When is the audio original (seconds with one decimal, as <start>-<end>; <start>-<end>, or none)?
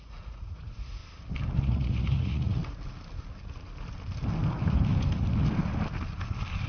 1.0-1.6; 2.6-6.7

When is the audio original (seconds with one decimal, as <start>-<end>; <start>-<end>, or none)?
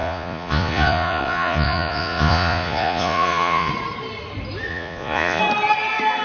3.7-4.7; 5.4-6.2